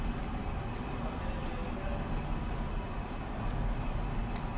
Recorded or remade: recorded